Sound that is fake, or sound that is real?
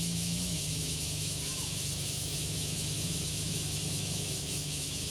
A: fake